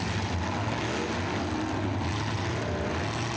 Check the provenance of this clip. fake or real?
real